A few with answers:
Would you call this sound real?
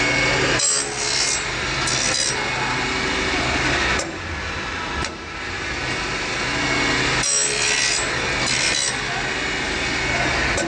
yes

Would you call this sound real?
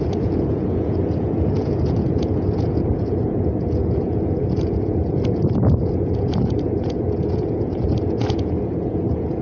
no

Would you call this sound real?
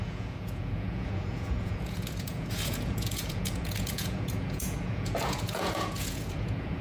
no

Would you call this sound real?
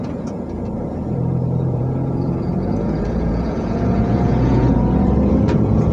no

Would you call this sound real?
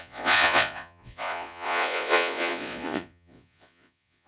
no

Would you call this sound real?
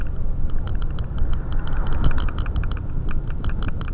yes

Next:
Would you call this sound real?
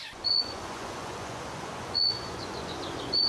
no